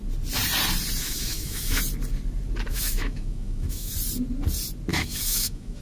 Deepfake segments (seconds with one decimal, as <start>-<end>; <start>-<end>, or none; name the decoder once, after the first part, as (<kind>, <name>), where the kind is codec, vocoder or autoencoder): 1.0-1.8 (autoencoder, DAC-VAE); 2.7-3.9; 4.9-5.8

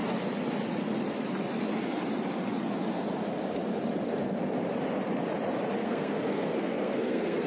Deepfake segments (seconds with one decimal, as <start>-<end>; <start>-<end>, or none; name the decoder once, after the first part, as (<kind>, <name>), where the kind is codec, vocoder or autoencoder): 5.8-7.5 (codec, SNAC)

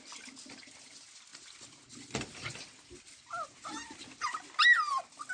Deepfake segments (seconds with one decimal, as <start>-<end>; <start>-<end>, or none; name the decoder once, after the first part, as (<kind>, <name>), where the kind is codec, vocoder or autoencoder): none

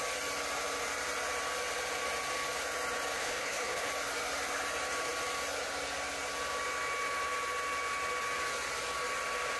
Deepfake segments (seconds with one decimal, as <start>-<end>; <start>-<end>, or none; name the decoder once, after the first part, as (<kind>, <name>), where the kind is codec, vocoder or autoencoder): 3.2-3.9 (codec, HILCodec)